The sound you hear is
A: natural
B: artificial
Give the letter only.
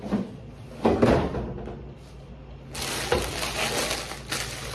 A